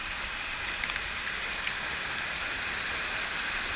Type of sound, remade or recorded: recorded